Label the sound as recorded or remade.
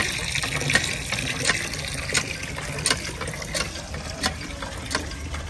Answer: recorded